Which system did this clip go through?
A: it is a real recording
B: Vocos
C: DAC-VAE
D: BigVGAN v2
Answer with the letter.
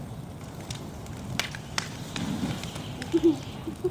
A